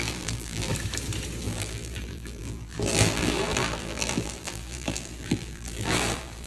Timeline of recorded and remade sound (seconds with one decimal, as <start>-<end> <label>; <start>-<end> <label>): 0.0-0.7 remade; 0.7-1.4 recorded; 1.4-6.5 remade